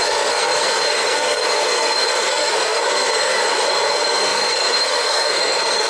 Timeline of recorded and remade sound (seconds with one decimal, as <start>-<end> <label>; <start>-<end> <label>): 0.0-5.9 remade